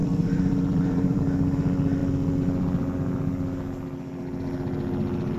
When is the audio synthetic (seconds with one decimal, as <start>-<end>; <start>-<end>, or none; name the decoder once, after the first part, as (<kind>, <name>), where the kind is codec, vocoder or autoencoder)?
0.0-1.2 (vocoder, BigVGAN v2)